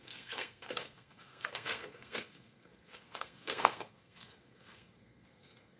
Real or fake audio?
fake